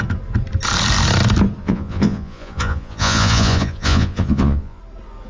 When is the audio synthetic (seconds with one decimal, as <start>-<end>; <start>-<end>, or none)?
1.6-4.8